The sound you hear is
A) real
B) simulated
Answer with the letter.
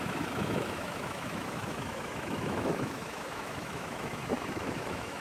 B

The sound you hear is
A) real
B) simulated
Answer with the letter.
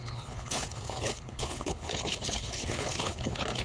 B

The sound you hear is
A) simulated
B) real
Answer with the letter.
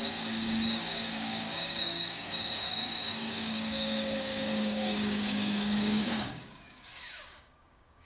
A